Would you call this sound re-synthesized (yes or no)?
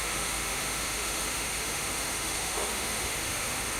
yes